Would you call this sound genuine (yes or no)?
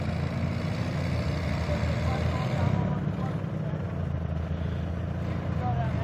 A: yes